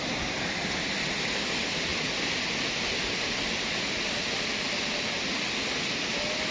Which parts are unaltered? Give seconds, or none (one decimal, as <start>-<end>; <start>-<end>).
0.0-6.5